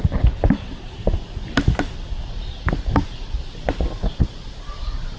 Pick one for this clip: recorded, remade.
recorded